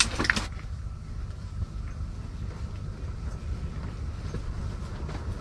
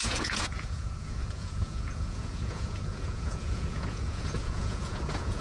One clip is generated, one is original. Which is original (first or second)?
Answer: first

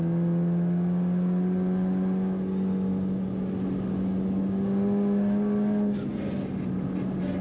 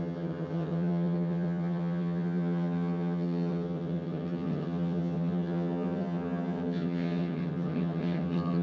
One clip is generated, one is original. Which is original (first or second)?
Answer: first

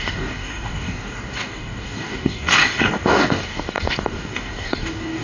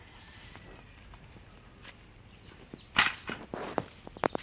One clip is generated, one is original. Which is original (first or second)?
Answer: second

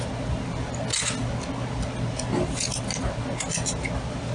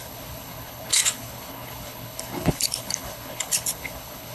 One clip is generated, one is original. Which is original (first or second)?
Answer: first